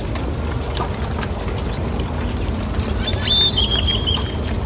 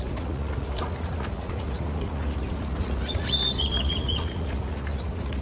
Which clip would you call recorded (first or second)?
first